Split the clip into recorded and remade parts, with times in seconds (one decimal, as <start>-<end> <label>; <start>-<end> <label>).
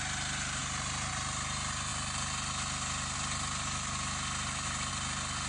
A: 0.0-5.5 recorded